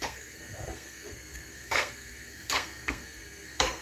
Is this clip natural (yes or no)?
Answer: no